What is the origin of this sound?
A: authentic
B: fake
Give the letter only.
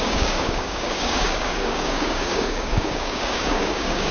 B